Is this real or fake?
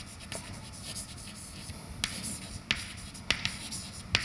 real